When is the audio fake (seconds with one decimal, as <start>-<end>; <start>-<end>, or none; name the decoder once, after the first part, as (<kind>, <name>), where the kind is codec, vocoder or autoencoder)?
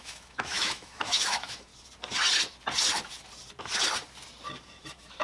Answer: 0.0-1.7 (autoencoder, DAC-VAE); 4.8-5.2